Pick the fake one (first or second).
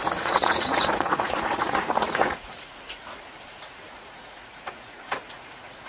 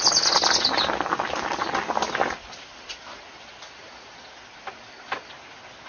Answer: first